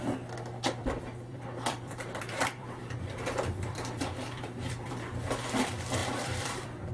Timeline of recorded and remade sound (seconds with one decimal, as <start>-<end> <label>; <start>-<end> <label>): 0.0-0.8 recorded; 0.8-4.9 remade; 4.9-6.0 recorded; 6.0-6.9 remade